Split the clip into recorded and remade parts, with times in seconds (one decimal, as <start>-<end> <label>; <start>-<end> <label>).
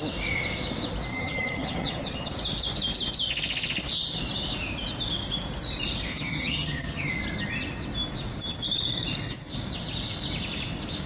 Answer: 0.0-1.1 recorded; 1.1-2.3 remade; 2.3-6.1 recorded; 6.1-7.1 remade; 7.1-11.1 recorded